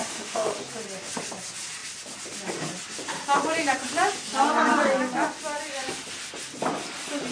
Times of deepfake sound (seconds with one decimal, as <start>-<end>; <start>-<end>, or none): 0.0-0.6